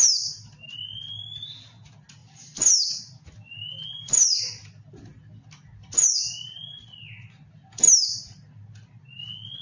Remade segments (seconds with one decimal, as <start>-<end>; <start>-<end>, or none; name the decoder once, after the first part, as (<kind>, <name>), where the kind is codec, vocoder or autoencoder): none